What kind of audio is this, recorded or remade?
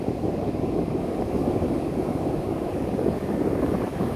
remade